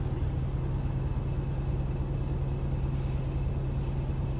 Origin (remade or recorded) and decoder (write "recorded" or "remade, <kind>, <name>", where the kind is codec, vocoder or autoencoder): recorded